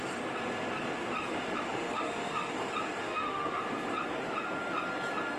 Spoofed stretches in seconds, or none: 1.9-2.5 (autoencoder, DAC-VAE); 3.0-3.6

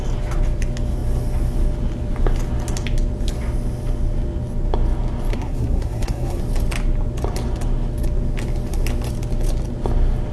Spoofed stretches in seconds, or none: 5.3-6.4 (codec, SNAC)

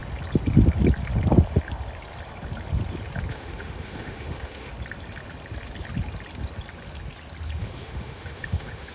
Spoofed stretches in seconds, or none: 3.3-4.7 (autoencoder, DAC-VAE); 7.6-8.9

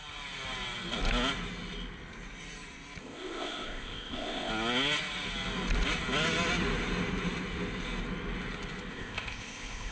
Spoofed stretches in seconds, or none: 3.0-4.5 (codec, ZipCodec); 8.9-9.9

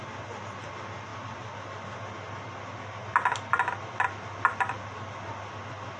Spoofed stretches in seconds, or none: none

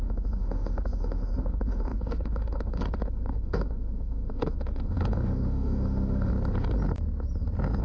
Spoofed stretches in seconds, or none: 0.0-6.3 (autoencoder, DAC-VAE)